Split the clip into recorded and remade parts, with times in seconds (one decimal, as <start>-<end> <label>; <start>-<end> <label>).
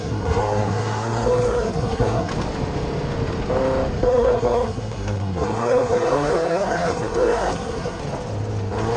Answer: 0.0-2.3 remade; 2.3-4.0 recorded; 4.0-8.0 remade; 8.0-9.0 recorded